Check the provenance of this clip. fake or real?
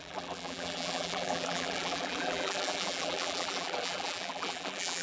fake